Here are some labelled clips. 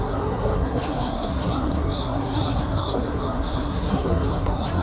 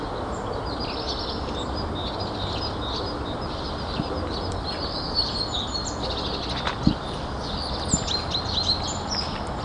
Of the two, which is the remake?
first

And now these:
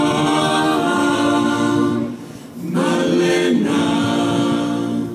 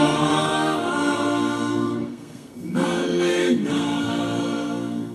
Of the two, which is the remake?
second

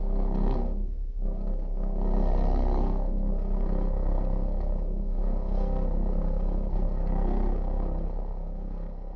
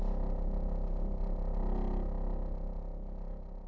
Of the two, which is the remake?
first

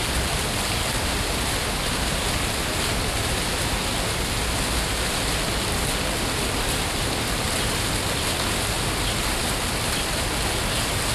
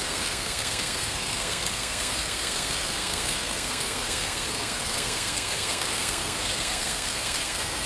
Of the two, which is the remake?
second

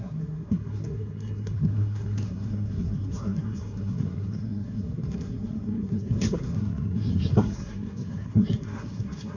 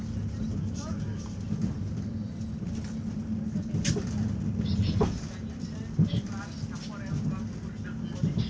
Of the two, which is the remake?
first